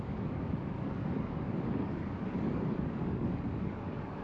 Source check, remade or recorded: remade